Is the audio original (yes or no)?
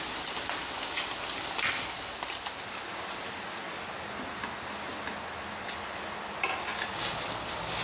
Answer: yes